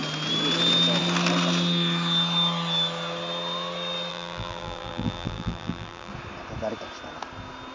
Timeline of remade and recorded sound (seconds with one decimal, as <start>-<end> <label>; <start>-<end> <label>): 0.0-4.1 recorded; 4.1-6.1 remade; 6.1-7.7 recorded